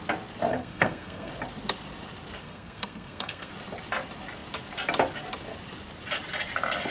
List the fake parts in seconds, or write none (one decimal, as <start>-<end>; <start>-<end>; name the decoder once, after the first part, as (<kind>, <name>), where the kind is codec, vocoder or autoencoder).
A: 0.5-1.3 (codec, SNAC); 2.4-3.5